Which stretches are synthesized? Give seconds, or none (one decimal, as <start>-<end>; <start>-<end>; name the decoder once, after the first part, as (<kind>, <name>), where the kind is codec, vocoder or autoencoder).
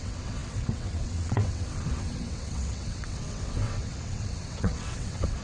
0.0-5.4 (vocoder, WaveNeXt)